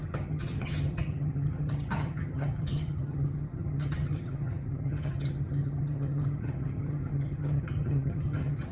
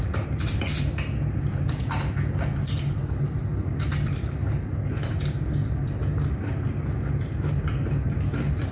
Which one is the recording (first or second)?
second